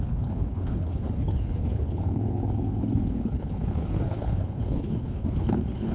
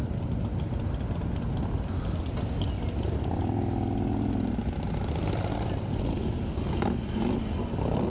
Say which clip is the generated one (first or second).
first